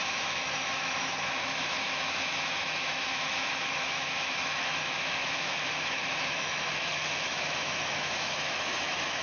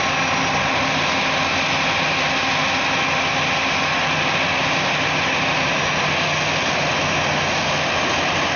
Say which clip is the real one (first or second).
second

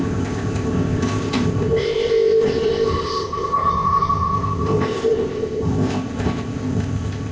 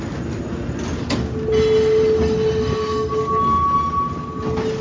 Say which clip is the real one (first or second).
second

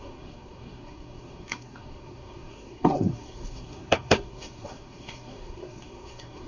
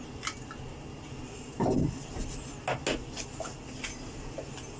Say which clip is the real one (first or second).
second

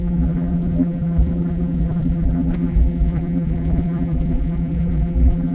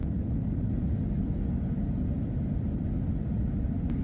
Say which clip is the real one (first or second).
second